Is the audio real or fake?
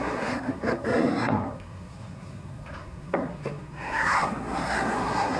fake